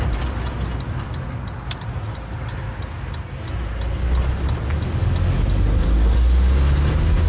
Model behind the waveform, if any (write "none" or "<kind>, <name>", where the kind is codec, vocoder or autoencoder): none